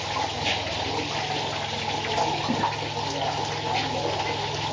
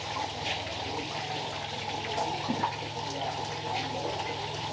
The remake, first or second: second